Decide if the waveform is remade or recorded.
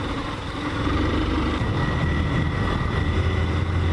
remade